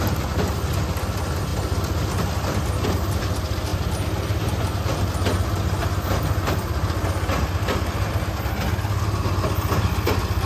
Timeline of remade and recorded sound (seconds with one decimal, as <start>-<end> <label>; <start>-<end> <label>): 0.0-10.5 recorded